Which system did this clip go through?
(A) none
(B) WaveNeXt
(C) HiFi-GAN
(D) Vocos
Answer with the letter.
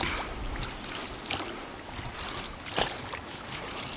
A